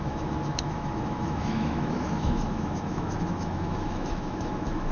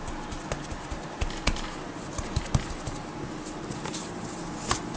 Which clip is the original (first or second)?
second